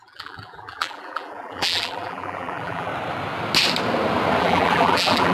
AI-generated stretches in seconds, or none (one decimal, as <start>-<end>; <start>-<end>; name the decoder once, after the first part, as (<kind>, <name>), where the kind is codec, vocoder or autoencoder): 0.0-2.9 (vocoder, BigVGAN v2); 4.4-5.3